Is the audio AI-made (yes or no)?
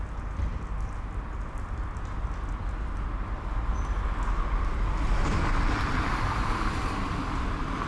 no